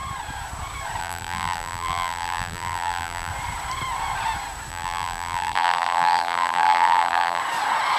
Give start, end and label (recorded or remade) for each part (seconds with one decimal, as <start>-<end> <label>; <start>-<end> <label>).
0.0-1.0 recorded; 1.0-3.3 remade; 3.3-4.7 recorded; 4.7-7.4 remade; 7.4-8.0 recorded